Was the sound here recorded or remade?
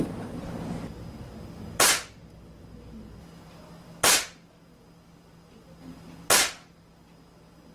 recorded